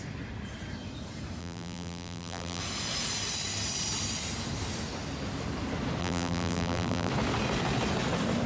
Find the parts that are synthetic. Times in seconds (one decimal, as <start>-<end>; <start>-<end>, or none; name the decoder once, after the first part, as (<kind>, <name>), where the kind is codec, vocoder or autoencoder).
1.4-2.6 (vocoder, BigVGAN v2); 6.0-7.1